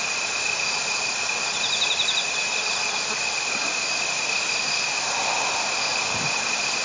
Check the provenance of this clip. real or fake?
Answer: real